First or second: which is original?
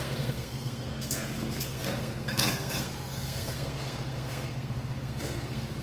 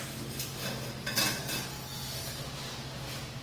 second